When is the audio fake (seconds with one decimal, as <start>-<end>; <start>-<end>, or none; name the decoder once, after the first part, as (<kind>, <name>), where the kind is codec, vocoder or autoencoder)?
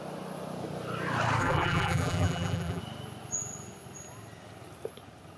1.4-2.8 (vocoder, BigVGAN v2)